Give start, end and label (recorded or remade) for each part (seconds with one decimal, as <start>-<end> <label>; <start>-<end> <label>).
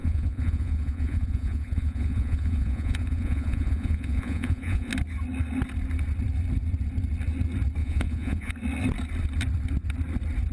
0.0-4.9 remade; 4.9-7.8 recorded; 7.8-8.5 remade; 8.5-10.5 recorded